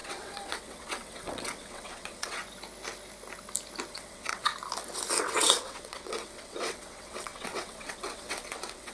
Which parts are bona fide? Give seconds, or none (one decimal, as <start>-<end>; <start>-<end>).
2.4-3.9; 4.5-5.2